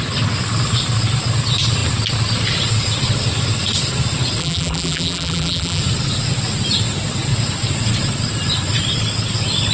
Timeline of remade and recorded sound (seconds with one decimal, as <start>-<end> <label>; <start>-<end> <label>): 0.0-4.4 recorded; 4.4-5.8 remade; 5.8-9.7 recorded